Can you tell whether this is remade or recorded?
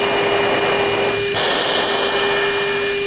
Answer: recorded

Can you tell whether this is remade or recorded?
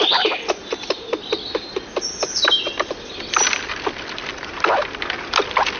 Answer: recorded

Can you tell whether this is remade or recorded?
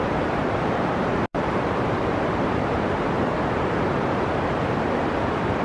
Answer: remade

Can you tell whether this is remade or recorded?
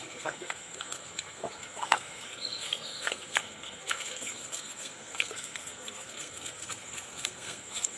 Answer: remade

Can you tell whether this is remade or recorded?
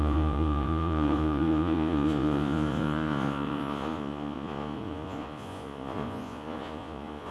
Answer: remade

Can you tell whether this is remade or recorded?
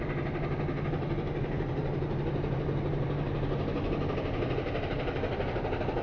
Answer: recorded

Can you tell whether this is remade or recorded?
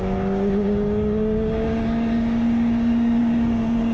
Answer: remade